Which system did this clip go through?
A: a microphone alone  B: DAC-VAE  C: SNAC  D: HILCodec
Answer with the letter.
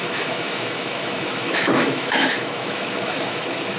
B